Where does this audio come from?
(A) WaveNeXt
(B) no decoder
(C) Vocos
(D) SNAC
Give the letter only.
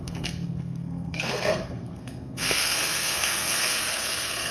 D